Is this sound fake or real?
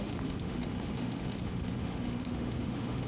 fake